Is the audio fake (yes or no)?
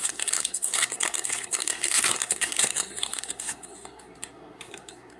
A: yes